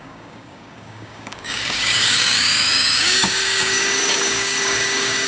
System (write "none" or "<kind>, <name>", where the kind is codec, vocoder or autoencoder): codec, DAC